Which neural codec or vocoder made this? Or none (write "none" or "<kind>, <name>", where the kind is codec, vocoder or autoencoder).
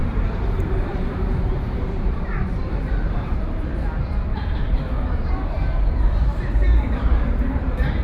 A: vocoder, BigVGAN v2